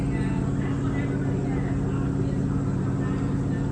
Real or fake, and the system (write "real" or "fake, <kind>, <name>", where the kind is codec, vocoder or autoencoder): real